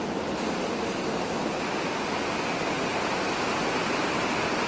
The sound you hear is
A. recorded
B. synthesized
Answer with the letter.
A